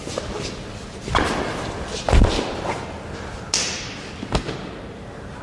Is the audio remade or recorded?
recorded